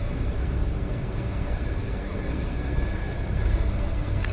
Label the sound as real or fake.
fake